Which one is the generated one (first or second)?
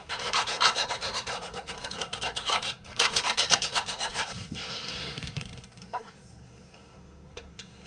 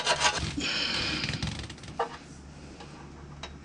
first